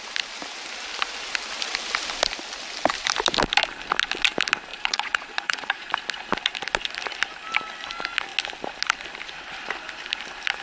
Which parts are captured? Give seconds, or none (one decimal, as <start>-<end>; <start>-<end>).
0.0-4.7; 5.9-10.6